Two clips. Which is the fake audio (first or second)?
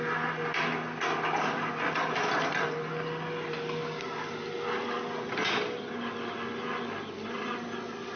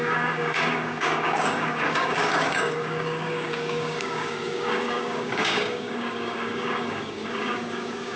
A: second